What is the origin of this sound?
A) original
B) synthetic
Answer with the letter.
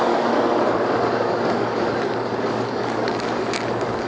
B